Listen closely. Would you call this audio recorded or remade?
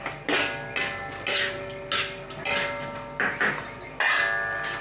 recorded